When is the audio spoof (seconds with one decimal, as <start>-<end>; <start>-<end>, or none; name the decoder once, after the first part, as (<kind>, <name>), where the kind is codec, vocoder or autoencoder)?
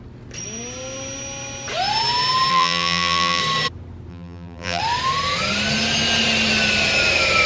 2.5-3.4 (vocoder, BigVGAN v2); 4.1-4.8